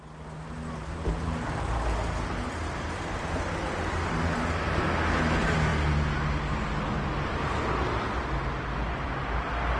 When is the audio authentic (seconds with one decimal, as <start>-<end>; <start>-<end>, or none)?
0.0-9.8